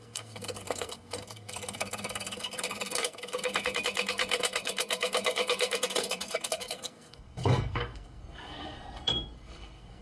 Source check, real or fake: fake